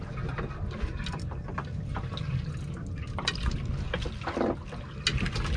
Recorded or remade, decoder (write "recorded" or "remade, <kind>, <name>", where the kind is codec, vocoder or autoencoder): recorded